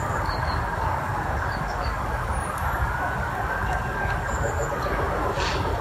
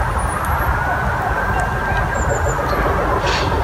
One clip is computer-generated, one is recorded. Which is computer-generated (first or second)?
first